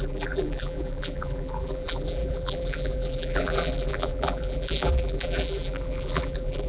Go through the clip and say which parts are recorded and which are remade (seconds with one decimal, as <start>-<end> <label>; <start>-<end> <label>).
0.0-6.7 remade